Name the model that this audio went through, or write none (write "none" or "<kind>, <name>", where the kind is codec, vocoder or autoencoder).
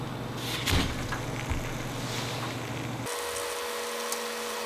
none